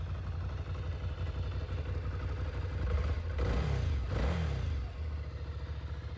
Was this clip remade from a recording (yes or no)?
no